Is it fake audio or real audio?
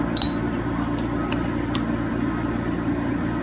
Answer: real